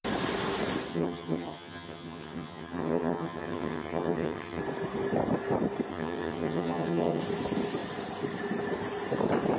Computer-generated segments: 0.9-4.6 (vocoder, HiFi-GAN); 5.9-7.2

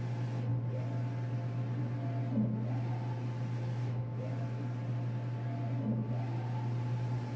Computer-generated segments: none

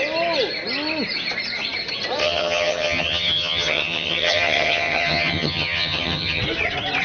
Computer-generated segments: 2.2-6.4 (vocoder, HiFi-GAN)

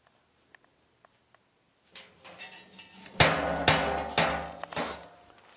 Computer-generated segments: none